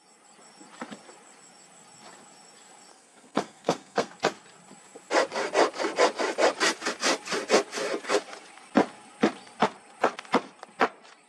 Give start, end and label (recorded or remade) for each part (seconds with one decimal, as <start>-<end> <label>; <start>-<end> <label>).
0.0-2.9 recorded; 2.9-4.1 remade; 4.1-11.3 recorded